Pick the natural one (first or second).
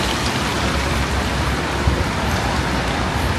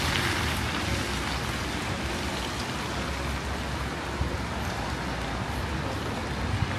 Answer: second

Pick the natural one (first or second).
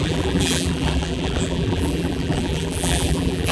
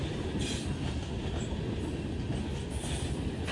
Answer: second